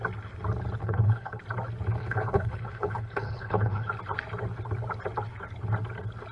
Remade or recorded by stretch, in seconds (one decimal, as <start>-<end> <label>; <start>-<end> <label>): 0.0-0.8 recorded; 0.8-1.4 remade; 1.4-2.0 recorded; 2.0-3.9 remade; 3.9-6.3 recorded